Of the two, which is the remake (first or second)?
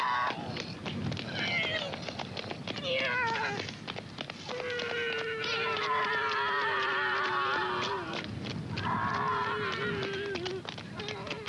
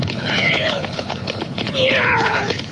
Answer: second